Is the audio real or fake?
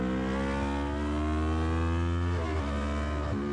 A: real